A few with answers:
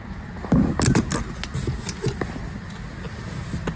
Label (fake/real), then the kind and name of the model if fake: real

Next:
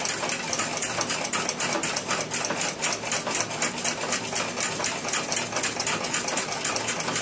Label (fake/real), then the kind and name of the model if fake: real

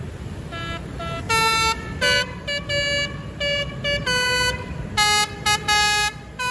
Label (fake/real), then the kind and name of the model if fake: real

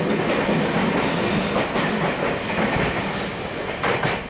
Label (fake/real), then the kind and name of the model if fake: real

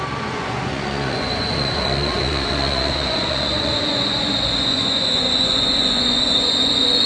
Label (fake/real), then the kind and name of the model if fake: fake, vocoder, Vocos